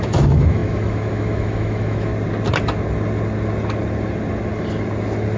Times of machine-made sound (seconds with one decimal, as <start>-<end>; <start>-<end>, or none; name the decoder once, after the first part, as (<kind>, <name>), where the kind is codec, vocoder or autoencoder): 0.0-2.1 (autoencoder, DAC-VAE)